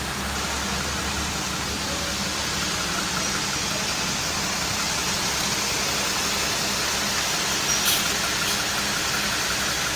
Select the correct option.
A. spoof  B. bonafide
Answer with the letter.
B